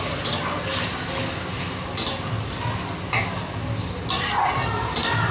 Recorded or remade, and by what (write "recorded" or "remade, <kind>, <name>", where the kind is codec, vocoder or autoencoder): recorded